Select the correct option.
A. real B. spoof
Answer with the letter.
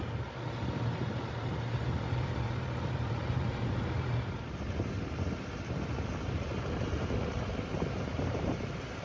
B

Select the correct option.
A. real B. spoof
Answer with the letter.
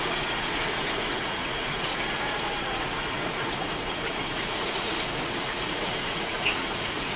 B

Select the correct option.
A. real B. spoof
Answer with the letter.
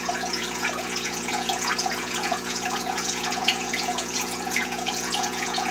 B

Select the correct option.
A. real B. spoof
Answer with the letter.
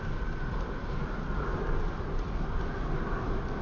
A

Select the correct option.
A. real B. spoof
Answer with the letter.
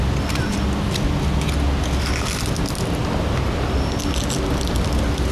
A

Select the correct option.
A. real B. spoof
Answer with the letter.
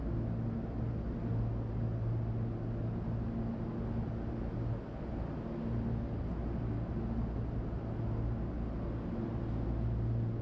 A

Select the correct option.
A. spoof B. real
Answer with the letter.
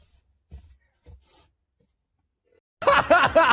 B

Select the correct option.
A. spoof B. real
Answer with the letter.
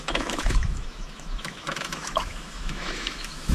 A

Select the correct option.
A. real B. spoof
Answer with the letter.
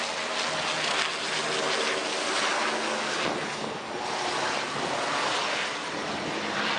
A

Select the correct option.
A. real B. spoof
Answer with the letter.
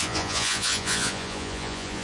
B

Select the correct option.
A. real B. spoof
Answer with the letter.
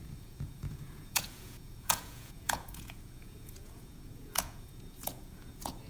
B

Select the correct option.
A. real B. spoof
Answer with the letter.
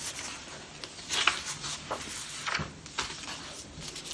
A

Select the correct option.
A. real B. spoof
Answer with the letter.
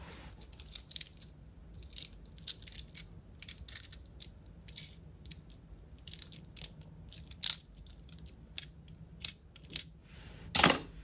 A